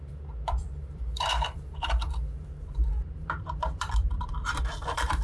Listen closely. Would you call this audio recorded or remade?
remade